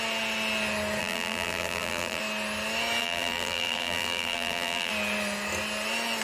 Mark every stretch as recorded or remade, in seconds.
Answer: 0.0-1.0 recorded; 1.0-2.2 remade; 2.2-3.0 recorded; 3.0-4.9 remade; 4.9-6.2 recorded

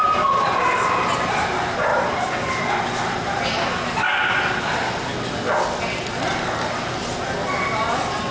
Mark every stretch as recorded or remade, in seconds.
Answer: 0.0-8.3 recorded

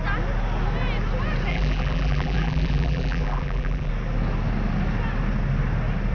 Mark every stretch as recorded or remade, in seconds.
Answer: 0.0-1.5 recorded; 1.5-3.9 remade; 3.9-6.1 recorded